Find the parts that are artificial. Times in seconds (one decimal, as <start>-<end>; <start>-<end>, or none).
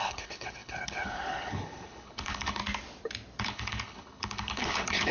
0.0-2.6; 3.4-5.1